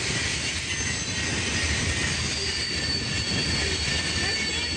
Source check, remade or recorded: recorded